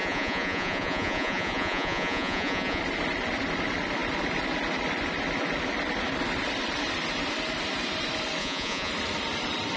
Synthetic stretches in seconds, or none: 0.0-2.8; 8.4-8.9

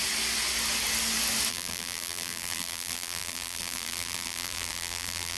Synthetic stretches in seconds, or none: 1.5-5.4

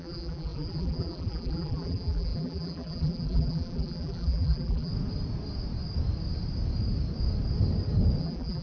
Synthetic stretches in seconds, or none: 0.0-4.9; 8.2-8.6

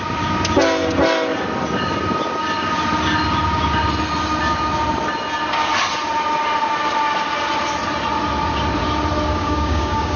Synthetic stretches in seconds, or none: 9.3-10.2

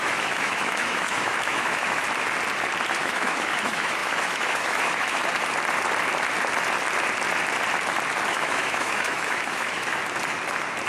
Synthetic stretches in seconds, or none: 0.0-2.0; 3.0-5.2; 8.3-10.0

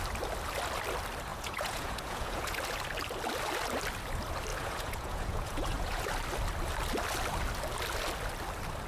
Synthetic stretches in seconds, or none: 1.3-2.6; 4.5-6.0

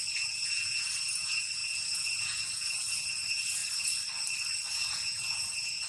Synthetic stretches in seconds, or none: 0.0-3.6; 4.7-5.9